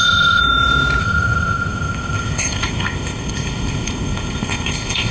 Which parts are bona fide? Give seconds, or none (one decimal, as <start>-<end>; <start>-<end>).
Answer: 0.4-1.0